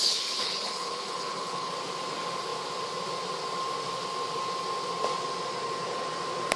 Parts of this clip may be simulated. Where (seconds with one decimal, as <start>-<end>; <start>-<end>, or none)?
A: 0.0-1.7

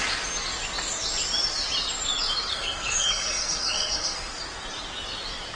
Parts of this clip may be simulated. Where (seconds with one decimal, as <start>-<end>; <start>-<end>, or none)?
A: 2.5-4.3

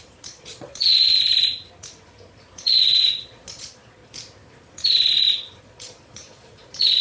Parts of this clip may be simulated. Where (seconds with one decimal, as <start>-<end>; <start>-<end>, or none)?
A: 0.0-1.1; 2.6-4.0; 5.6-7.0

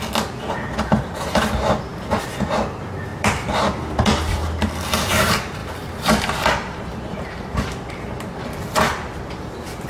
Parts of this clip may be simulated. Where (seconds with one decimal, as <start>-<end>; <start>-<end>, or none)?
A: 3.1-5.1; 5.6-9.9